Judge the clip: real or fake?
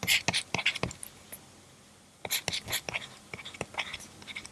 real